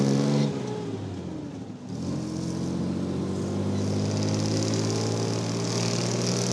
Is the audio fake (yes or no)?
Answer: no